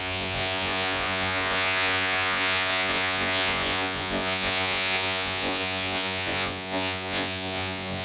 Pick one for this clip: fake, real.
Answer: fake